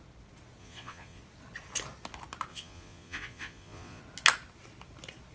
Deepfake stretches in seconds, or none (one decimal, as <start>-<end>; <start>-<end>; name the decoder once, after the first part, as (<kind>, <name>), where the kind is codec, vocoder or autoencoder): 0.6-1.2 (vocoder, Vocos); 2.5-4.0